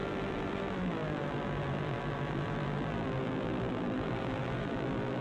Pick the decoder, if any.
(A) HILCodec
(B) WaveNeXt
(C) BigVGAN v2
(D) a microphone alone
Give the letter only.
C